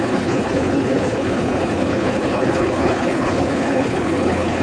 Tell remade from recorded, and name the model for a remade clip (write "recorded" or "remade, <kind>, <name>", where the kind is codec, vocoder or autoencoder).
remade, codec, HILCodec